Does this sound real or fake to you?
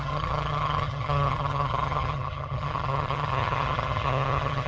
fake